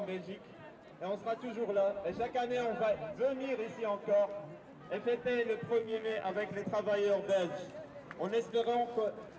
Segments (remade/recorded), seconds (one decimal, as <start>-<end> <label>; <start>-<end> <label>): 0.0-5.8 recorded; 5.8-6.3 remade; 6.3-9.4 recorded